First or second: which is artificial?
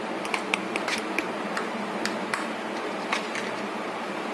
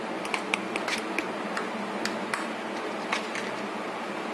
first